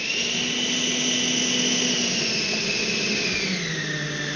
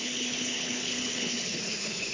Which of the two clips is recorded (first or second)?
first